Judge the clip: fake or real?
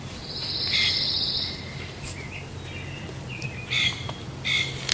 real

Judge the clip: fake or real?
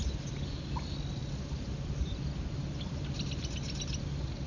real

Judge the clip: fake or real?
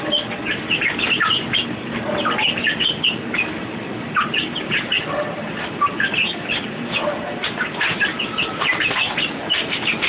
real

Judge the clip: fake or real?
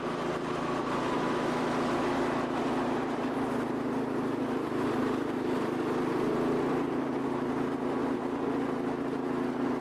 real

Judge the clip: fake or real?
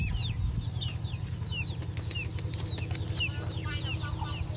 real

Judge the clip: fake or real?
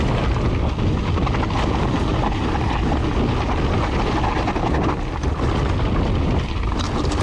real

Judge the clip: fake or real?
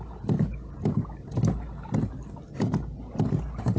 real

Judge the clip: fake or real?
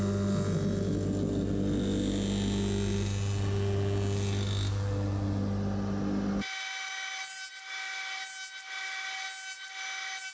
real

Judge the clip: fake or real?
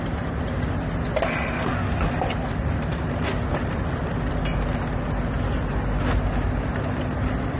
real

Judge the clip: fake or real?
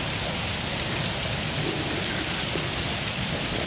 real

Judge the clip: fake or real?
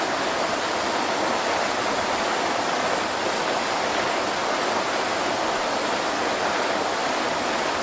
real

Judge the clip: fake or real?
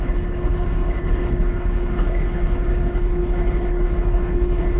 fake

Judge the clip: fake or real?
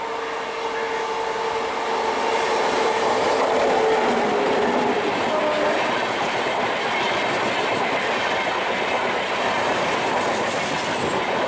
real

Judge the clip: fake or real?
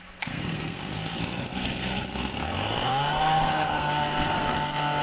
fake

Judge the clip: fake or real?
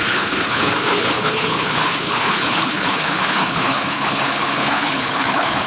fake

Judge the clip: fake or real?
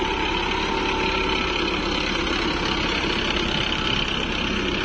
real